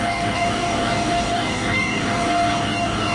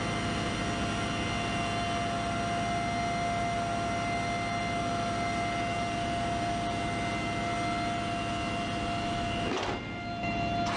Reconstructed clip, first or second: first